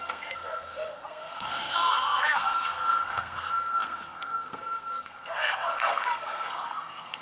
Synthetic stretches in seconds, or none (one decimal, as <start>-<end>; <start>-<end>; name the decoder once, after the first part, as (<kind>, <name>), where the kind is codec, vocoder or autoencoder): 0.0-7.2 (codec, SNAC)